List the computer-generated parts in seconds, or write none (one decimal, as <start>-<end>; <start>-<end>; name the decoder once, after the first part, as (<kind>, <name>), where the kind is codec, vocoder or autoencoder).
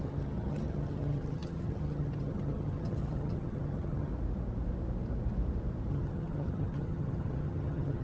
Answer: 0.0-4.1 (vocoder, HiFi-GAN); 5.9-8.0